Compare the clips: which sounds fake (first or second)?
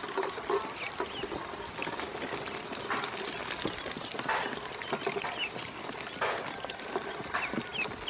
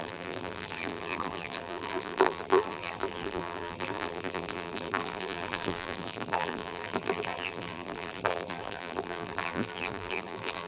second